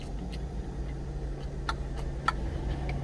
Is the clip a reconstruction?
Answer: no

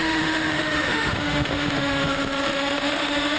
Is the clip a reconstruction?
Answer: yes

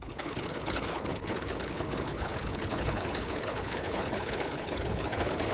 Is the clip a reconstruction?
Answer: yes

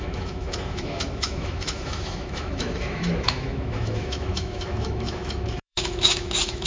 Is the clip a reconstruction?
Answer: yes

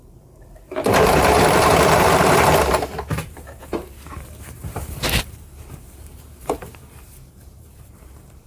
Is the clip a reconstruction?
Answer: yes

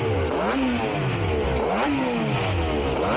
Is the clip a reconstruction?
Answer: no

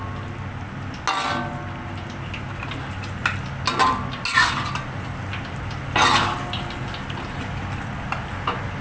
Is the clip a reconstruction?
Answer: no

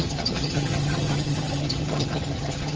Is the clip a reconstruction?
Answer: yes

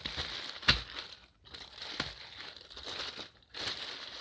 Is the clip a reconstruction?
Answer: no